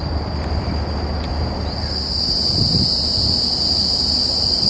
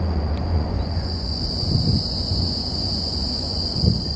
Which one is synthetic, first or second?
second